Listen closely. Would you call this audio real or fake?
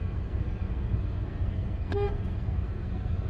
fake